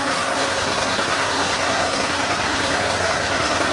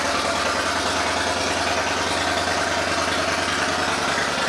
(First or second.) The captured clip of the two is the second